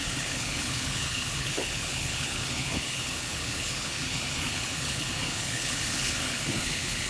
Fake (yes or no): yes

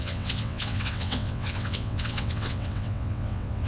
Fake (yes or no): yes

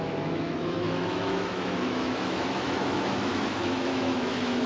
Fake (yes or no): yes